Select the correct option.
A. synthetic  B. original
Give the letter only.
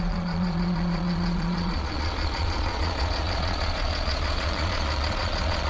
A